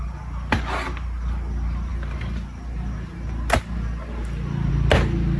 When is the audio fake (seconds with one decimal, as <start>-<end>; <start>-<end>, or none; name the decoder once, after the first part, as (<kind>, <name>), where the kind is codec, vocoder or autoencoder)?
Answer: none